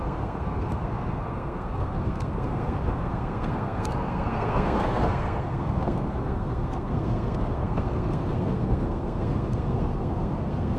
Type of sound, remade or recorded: remade